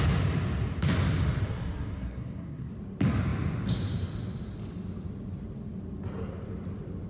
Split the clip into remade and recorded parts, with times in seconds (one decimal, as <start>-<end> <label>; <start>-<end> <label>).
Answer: 0.0-1.5 recorded; 1.5-2.7 remade; 2.7-7.1 recorded